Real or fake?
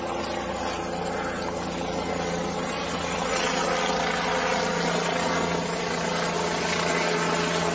real